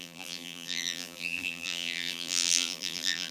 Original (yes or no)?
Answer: no